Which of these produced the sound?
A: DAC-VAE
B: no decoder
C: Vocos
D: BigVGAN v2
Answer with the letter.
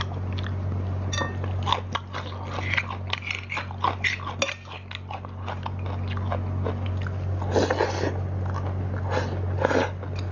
B